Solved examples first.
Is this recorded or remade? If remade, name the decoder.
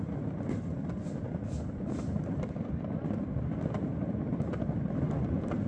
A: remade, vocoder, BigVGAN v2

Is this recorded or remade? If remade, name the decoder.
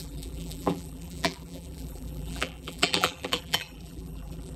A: remade, vocoder, BigVGAN v2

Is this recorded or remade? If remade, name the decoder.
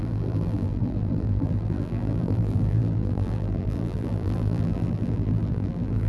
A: remade, vocoder, BigVGAN v2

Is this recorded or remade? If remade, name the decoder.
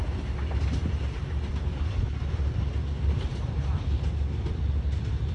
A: remade, vocoder, BigVGAN v2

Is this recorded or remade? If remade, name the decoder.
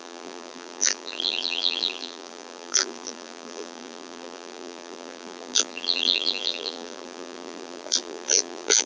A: remade, vocoder, BigVGAN v2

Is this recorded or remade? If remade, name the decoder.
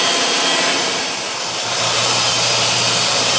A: remade, vocoder, BigVGAN v2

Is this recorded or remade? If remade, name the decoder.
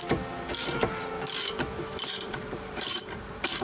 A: remade, vocoder, BigVGAN v2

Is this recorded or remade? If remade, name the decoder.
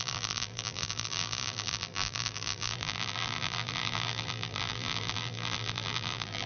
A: remade, vocoder, BigVGAN v2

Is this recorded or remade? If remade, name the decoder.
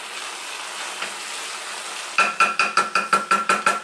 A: recorded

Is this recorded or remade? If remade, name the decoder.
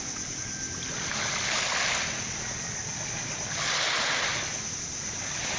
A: recorded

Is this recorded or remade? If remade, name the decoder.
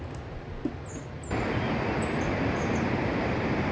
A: recorded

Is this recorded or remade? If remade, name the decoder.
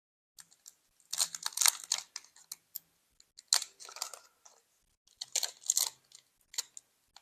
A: recorded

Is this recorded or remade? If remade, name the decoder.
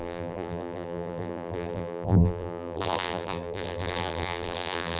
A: remade, vocoder, BigVGAN v2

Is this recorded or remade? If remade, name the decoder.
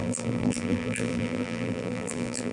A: remade, vocoder, BigVGAN v2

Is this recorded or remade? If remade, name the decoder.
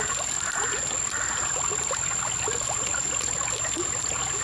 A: recorded